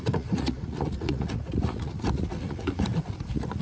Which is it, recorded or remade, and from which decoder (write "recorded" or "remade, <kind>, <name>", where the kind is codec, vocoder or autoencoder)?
remade, vocoder, Vocos